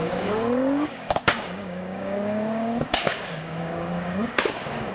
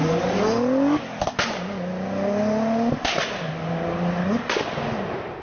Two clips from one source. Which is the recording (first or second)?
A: second